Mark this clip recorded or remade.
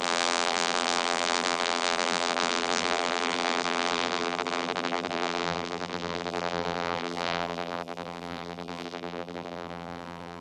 remade